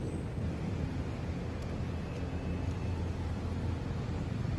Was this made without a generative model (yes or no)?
yes